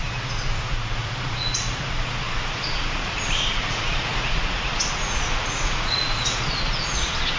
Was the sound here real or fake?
fake